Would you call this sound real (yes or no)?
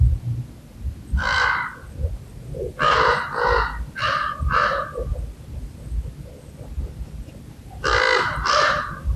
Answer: yes